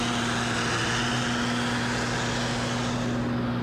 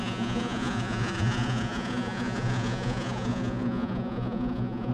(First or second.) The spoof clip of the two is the second